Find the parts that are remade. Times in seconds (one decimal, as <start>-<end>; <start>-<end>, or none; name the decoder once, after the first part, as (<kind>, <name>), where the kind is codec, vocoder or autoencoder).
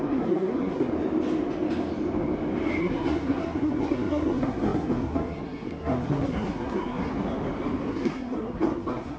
0.0-0.9 (codec, SNAC); 2.8-7.1; 7.9-9.2